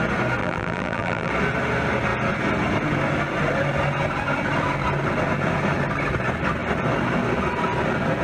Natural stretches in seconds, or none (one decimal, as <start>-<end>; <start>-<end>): 0.0-0.4; 1.3-8.2